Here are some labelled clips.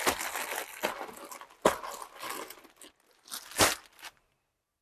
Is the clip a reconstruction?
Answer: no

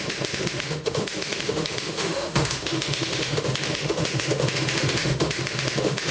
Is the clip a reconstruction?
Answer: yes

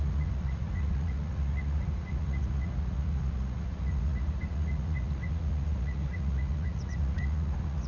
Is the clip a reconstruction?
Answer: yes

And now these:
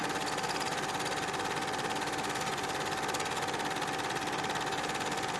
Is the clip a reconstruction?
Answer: no